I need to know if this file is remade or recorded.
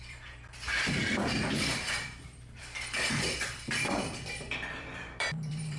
remade